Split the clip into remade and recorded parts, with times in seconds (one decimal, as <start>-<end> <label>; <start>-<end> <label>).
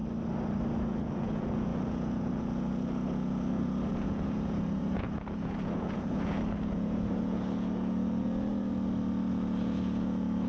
0.0-0.8 recorded; 0.8-8.5 remade; 8.5-9.3 recorded; 9.3-10.5 remade